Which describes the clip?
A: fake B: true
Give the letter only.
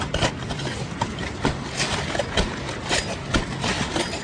B